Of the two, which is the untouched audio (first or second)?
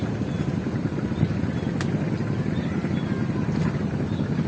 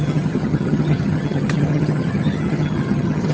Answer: first